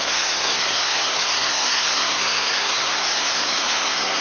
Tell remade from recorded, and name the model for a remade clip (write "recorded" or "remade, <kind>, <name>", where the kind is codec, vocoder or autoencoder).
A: remade, codec, SNAC